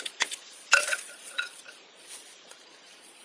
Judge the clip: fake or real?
fake